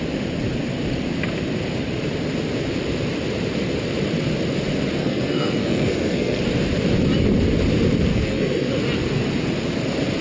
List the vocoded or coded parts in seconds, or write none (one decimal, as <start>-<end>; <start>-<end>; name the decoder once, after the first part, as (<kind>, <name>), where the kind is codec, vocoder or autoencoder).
5.0-6.4 (codec, SNAC); 8.1-8.7